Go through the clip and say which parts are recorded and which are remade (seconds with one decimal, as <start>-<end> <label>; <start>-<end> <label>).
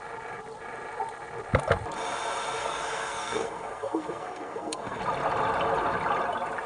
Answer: 0.0-2.6 recorded; 2.6-5.0 remade; 5.0-6.7 recorded